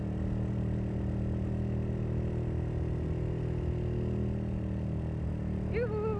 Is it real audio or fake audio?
real